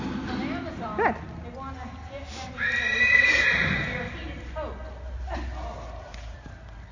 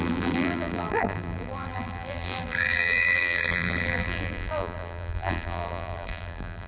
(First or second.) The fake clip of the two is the second